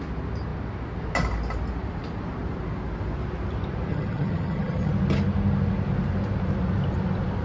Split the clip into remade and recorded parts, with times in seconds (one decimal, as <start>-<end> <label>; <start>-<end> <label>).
0.0-3.9 recorded; 3.9-4.9 remade; 4.9-7.4 recorded